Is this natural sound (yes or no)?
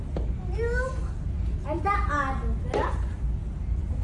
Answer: yes